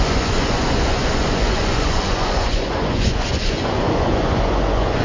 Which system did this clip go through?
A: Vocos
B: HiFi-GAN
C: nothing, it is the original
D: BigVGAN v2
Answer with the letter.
A